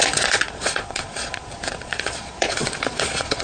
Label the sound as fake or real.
fake